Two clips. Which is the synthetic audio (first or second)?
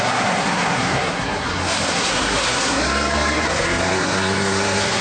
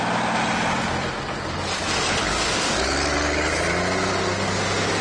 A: first